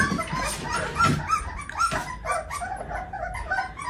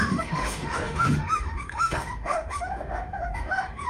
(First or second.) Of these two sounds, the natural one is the first